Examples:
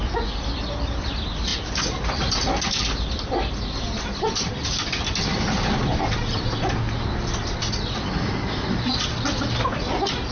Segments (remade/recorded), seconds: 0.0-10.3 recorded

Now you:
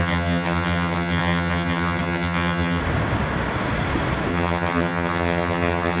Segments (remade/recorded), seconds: 0.0-2.8 remade; 2.8-4.3 recorded; 4.3-6.0 remade

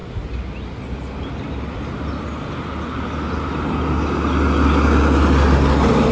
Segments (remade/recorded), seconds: 0.0-6.1 recorded